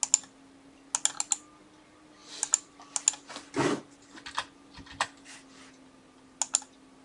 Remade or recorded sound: recorded